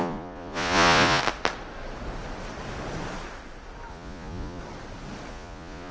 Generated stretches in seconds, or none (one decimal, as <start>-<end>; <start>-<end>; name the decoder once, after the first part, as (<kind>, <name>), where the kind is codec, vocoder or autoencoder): 0.0-1.2 (vocoder, Vocos); 3.9-4.6; 5.3-5.9